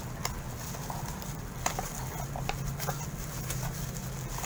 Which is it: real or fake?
real